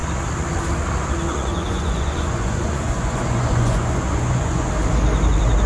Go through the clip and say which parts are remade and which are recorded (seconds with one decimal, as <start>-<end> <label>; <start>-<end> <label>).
0.0-1.3 recorded; 1.3-4.7 remade; 4.7-5.7 recorded